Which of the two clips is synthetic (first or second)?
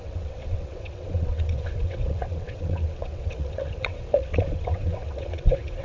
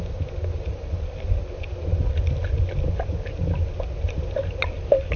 first